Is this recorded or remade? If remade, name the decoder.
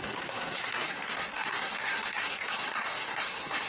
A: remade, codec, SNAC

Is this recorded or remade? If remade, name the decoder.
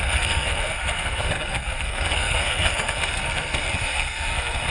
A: remade, codec, SNAC